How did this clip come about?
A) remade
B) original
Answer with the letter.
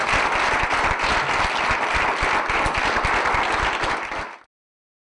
B